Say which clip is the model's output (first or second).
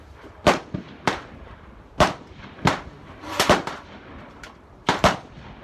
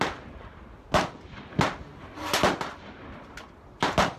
first